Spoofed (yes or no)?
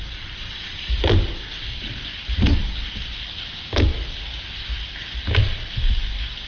yes